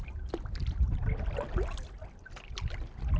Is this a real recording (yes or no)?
yes